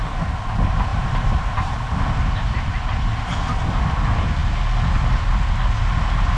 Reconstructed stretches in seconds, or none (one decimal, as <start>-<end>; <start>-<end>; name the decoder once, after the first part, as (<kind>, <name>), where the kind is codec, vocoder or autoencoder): 0.9-2.3 (vocoder, BigVGAN v2)